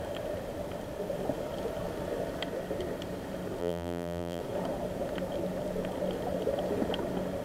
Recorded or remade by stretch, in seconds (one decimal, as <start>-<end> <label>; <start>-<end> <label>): 0.0-3.6 recorded; 3.6-4.4 remade; 4.4-7.4 recorded